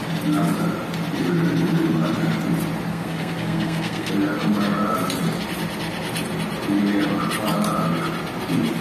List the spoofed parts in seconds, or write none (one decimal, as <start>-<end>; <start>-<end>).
2.9-4.1